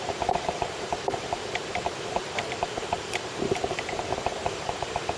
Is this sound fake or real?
fake